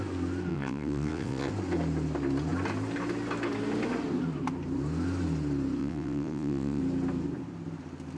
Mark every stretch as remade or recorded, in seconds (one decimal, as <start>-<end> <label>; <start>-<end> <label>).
0.0-0.5 recorded; 0.5-1.5 remade; 1.5-5.8 recorded; 5.8-6.8 remade; 6.8-8.2 recorded